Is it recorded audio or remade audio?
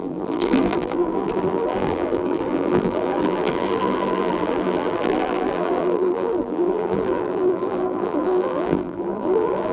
remade